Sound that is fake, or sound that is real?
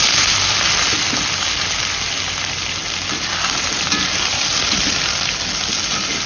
real